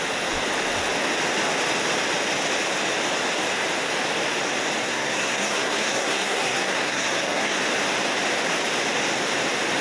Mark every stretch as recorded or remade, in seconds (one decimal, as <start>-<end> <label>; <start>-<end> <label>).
0.0-4.8 recorded; 4.8-7.6 remade; 7.6-9.8 recorded